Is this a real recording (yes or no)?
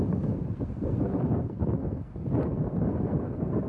no